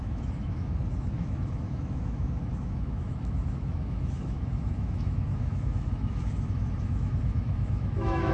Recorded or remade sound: remade